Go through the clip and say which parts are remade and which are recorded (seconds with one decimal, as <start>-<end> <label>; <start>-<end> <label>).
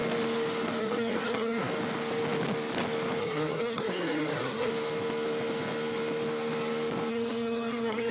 0.0-0.8 recorded; 0.8-1.7 remade; 1.7-3.2 recorded; 3.2-4.7 remade; 4.7-7.1 recorded; 7.1-8.1 remade